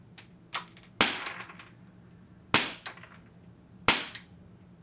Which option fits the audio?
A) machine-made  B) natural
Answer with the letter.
B